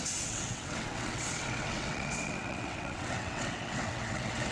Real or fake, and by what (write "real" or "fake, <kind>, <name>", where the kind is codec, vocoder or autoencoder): fake, vocoder, WaveNeXt